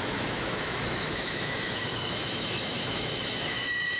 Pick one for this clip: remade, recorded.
remade